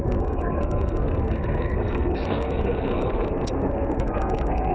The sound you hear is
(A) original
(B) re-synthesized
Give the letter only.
B